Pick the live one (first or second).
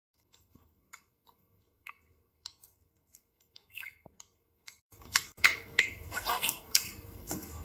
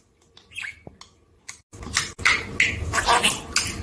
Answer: second